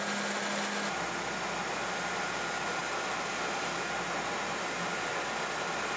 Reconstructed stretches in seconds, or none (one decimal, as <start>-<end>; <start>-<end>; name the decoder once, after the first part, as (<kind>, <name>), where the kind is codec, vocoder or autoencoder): none